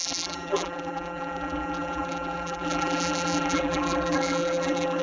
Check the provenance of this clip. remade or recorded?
remade